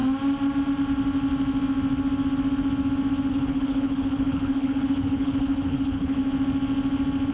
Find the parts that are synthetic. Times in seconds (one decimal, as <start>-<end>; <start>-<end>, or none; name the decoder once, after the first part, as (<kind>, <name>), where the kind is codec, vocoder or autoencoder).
3.3-6.2 (codec, HILCodec)

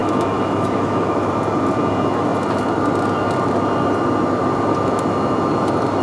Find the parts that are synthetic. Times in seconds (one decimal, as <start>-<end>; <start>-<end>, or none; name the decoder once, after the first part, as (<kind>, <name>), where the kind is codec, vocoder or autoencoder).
0.0-1.3 (autoencoder, DAC-VAE)